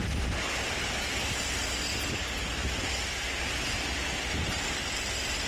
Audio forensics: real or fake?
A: real